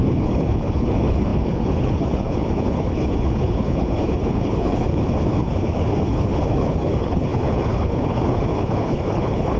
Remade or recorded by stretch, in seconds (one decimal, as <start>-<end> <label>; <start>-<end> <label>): 0.0-9.6 remade